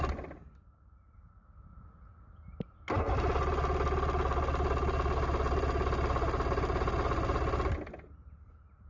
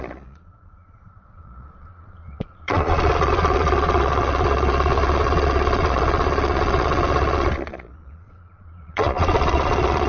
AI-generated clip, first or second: second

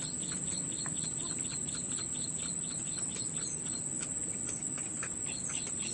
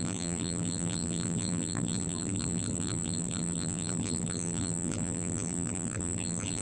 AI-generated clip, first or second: second